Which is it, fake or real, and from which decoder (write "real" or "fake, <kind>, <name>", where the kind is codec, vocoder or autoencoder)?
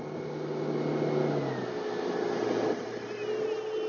real